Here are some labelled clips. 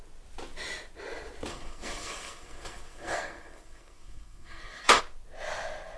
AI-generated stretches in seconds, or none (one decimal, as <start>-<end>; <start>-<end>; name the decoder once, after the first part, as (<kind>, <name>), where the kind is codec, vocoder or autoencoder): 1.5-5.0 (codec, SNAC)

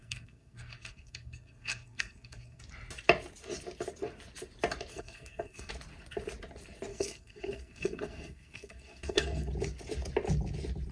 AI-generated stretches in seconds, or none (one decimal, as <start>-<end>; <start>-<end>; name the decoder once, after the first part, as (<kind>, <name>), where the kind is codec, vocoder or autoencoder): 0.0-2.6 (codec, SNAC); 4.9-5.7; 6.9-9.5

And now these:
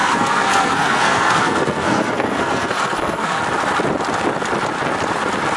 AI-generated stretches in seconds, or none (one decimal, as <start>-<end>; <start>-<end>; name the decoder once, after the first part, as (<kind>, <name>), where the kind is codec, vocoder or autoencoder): 0.0-3.4 (codec, SNAC)

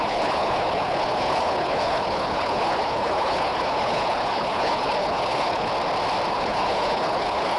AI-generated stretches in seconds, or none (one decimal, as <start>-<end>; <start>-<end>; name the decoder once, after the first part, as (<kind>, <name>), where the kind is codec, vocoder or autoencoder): 0.0-5.7 (codec, HILCodec); 6.3-7.6

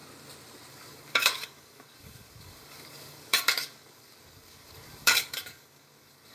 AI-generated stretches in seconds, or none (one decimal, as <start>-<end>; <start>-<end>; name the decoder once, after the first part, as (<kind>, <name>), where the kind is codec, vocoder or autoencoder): 0.7-6.3 (codec, DAC)

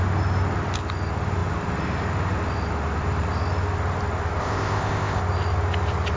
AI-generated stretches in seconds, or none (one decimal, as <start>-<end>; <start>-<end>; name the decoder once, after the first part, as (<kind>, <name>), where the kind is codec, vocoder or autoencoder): 4.4-5.2 (codec, ZipCodec)